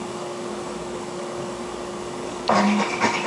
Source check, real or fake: fake